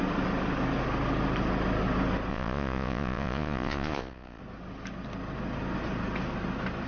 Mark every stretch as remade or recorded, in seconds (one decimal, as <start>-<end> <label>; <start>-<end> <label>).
0.0-2.3 recorded; 2.3-4.4 remade; 4.4-6.9 recorded